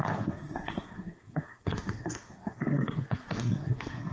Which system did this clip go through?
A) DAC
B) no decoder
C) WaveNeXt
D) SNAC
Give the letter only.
D